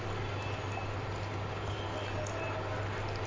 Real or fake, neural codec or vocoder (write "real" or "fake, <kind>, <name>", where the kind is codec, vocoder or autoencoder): real